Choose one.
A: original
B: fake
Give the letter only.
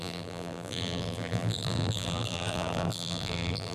B